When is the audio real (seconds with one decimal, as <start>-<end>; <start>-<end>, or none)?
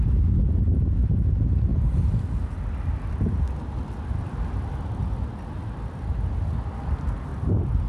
0.0-7.9